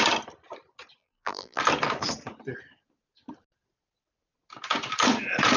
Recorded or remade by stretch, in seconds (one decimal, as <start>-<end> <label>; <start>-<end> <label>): 0.0-1.0 recorded; 1.0-1.6 remade; 1.6-5.6 recorded